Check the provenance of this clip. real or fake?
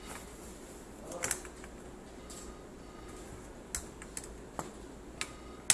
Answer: real